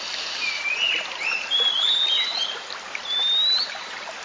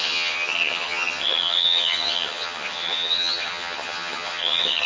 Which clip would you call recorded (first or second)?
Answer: first